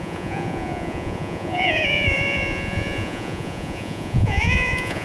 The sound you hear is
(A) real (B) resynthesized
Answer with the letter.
B